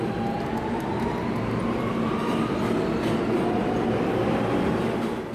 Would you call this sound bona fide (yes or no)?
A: yes